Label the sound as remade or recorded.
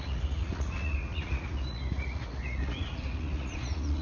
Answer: remade